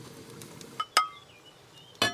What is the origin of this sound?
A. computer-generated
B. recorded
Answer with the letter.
B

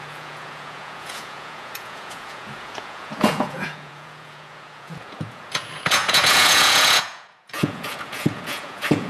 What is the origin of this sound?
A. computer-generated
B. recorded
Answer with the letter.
A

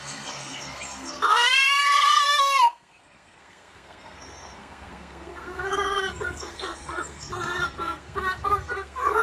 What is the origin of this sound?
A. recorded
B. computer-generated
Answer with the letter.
B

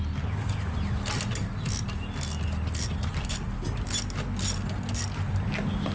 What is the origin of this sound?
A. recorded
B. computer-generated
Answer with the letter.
A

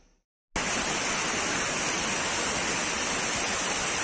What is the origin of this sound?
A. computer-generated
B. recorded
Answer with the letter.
B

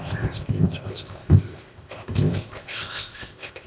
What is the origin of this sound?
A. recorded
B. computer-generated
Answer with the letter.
B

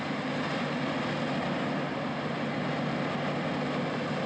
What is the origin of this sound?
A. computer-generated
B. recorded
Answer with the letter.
B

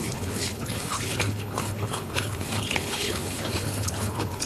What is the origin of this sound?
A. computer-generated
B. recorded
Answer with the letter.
A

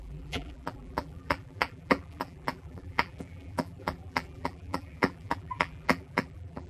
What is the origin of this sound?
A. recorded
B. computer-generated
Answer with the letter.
B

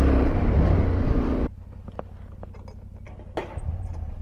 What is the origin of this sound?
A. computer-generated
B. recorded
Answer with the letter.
B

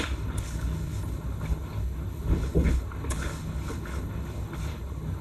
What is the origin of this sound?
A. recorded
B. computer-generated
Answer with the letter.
B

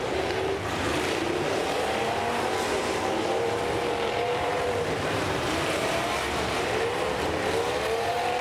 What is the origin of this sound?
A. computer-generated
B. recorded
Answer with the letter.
A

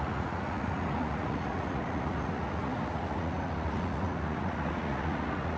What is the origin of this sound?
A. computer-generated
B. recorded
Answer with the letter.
A